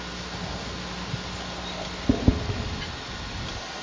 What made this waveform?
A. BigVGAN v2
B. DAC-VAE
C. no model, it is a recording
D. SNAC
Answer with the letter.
C